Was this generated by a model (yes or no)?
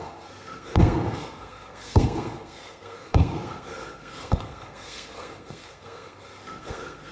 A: yes